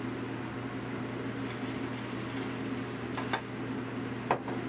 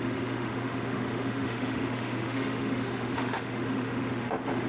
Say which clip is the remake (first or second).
second